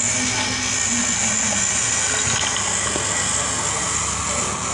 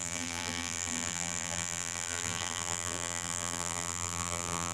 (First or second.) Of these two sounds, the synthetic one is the second